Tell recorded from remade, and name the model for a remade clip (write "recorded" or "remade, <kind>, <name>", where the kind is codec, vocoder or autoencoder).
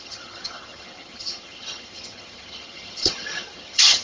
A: remade, vocoder, HiFi-GAN